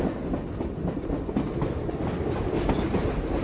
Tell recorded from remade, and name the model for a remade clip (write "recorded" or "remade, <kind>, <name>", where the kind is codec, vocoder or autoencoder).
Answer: recorded